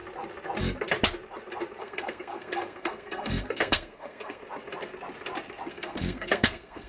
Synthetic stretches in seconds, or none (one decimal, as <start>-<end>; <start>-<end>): 1.8-4.4; 5.7-6.9